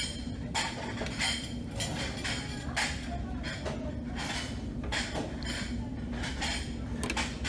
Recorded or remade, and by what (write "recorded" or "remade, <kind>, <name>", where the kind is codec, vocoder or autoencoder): recorded